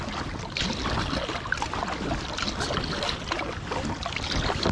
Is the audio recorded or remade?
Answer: recorded